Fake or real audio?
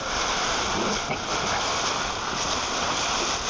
real